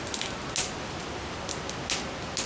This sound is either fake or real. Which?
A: real